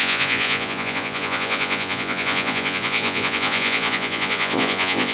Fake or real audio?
fake